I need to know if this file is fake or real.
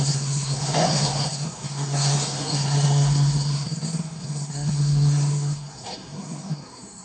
fake